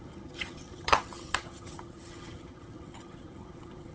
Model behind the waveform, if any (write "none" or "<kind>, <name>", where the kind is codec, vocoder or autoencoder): vocoder, HiFi-GAN